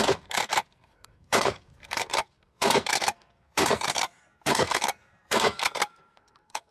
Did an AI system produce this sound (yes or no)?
yes